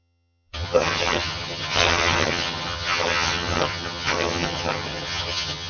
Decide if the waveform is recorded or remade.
remade